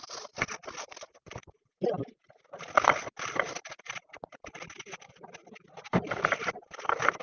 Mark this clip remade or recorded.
recorded